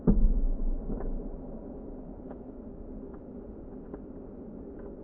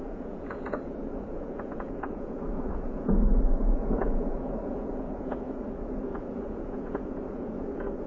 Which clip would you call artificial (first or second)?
second